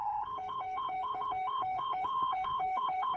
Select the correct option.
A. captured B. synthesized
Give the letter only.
B